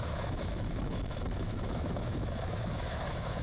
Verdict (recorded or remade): remade